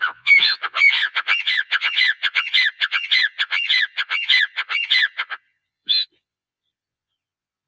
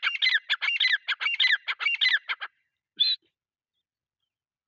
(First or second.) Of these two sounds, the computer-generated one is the first